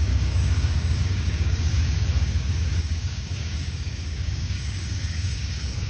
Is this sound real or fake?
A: fake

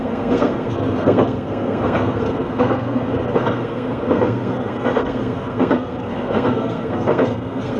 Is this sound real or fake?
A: fake